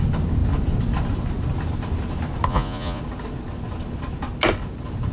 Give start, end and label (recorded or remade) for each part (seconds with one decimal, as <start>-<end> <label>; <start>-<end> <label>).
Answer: 0.0-2.5 recorded; 2.5-3.0 remade; 3.0-5.1 recorded